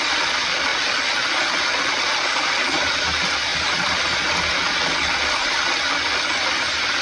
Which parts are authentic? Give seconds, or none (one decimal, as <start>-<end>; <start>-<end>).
0.0-7.0